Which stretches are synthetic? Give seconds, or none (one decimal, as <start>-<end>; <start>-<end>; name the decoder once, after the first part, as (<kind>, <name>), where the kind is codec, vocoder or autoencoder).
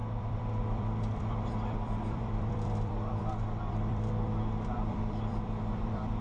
0.0-6.2 (vocoder, BigVGAN v2)